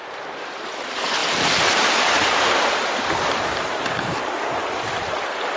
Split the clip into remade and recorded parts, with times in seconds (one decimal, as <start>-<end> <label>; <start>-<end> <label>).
0.0-5.6 recorded